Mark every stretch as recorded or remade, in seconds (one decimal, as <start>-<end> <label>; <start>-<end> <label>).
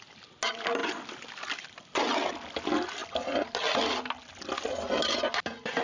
0.0-5.8 recorded